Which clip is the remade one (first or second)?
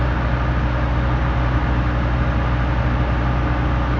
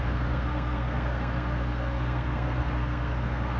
second